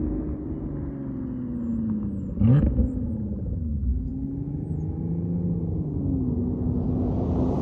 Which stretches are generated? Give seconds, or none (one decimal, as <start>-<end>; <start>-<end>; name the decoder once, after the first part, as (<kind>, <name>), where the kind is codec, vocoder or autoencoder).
none